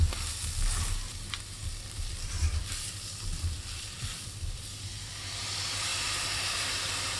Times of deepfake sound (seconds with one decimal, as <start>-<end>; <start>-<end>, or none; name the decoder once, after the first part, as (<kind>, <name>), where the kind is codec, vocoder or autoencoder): 1.6-4.8 (vocoder, BigVGAN v2); 5.9-6.5